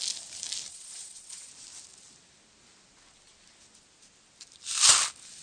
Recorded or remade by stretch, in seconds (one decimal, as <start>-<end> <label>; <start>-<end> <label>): 0.0-0.7 recorded; 0.7-1.5 remade; 1.5-5.4 recorded